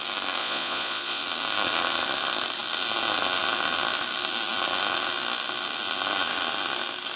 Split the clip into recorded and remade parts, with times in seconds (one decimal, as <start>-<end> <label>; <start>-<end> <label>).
0.0-0.4 recorded; 0.4-1.2 remade; 1.2-7.2 recorded